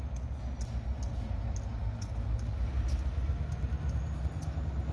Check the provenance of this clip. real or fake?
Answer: real